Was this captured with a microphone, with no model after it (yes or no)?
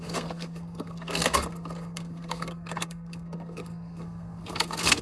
no